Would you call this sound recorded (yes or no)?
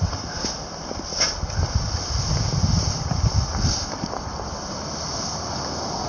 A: yes